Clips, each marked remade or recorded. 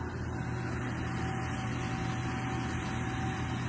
recorded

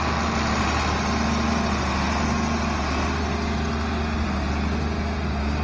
recorded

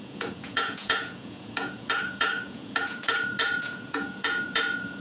remade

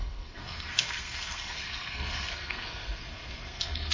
remade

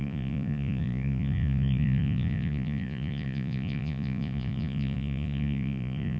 remade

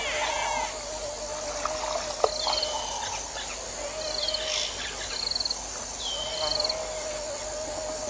recorded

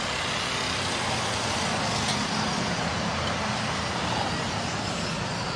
recorded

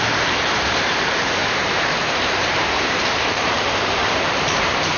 remade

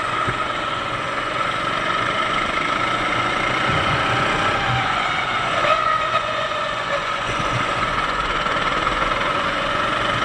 remade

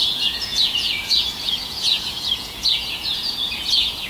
remade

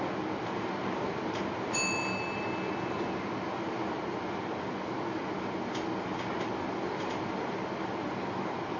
recorded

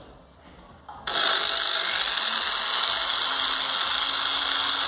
recorded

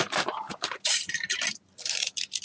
remade